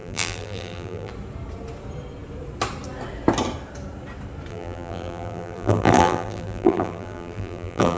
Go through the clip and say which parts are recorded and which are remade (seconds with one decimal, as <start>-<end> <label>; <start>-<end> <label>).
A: 0.0-1.1 remade; 1.1-4.5 recorded; 4.5-8.0 remade